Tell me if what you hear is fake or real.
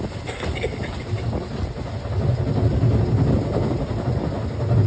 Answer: real